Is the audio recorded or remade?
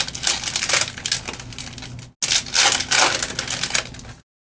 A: recorded